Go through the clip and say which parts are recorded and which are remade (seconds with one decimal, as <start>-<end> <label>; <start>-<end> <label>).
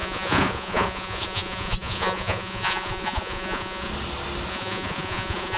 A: 0.0-3.9 remade; 3.9-4.5 recorded; 4.5-5.6 remade